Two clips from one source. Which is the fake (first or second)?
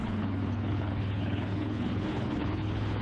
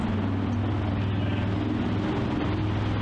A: first